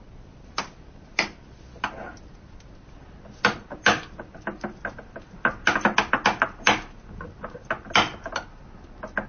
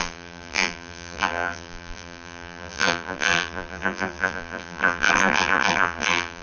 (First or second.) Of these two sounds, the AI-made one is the second